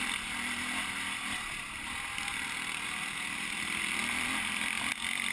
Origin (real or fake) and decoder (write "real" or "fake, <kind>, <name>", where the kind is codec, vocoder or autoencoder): real